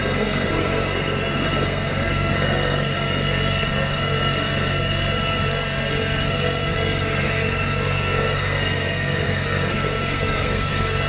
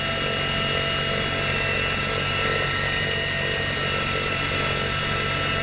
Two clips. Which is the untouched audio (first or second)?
second